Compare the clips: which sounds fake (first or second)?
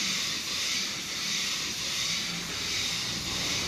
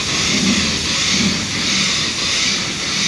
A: first